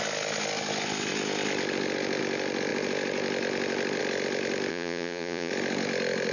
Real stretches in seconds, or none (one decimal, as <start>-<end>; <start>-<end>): 0.0-4.7; 5.5-6.3